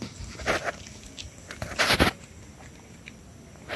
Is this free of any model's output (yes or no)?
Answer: yes